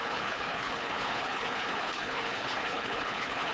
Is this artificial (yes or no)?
yes